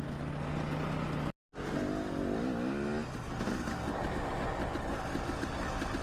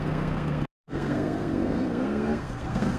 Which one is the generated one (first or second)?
second